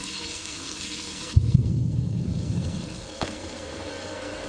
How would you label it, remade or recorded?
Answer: remade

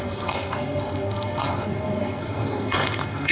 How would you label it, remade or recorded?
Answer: remade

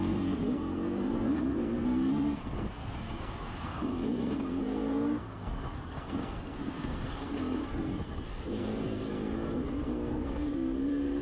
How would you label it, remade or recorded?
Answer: remade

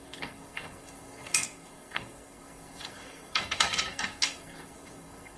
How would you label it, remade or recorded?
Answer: remade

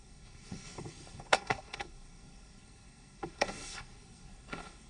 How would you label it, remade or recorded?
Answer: remade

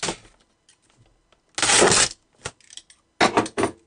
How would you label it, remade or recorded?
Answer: recorded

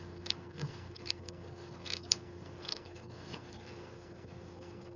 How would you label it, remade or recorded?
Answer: remade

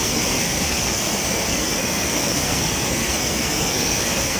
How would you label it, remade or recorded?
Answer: remade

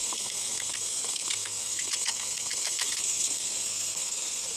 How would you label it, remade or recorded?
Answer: remade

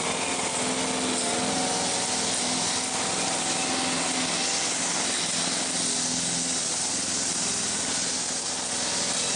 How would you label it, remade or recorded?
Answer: recorded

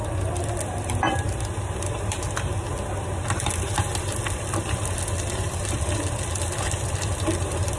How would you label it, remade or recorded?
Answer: recorded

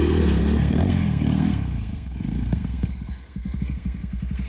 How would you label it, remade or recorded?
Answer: remade